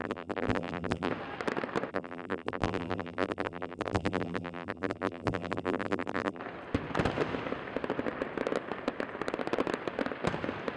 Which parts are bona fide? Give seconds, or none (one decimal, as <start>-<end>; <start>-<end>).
1.1-1.9; 6.4-10.8